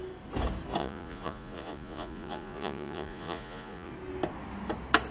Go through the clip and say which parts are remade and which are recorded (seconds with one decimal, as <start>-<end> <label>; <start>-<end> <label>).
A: 0.0-0.8 recorded; 0.8-3.9 remade; 3.9-5.1 recorded